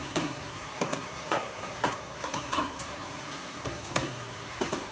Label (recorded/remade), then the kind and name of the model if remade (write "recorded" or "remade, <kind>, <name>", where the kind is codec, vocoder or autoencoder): remade, codec, SNAC